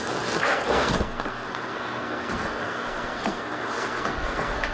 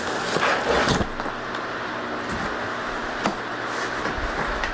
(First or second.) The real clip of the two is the second